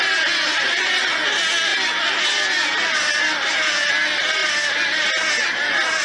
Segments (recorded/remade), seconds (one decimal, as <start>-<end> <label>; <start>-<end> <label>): 0.0-6.0 recorded